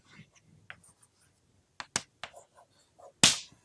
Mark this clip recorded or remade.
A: recorded